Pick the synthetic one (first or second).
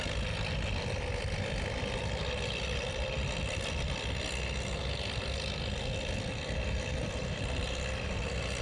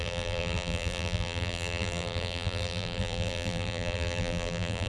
second